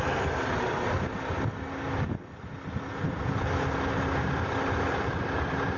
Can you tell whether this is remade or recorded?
recorded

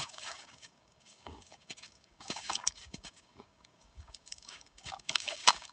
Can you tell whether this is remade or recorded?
remade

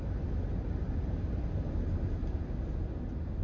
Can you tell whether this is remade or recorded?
recorded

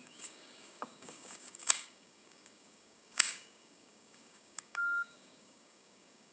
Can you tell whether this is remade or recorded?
remade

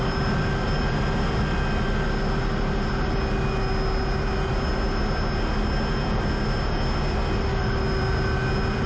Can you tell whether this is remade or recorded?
recorded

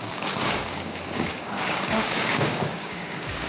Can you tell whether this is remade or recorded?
remade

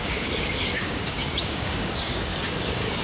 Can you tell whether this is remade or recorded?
remade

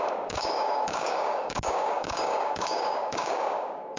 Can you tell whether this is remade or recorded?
remade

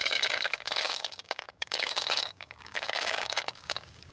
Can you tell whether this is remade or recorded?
remade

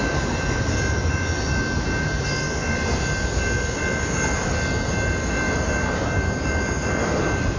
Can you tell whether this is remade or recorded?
recorded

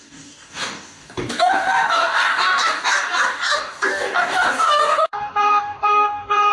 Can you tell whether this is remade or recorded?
remade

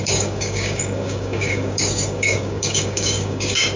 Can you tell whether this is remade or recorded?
remade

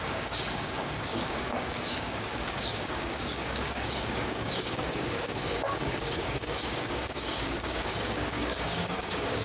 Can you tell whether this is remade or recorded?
remade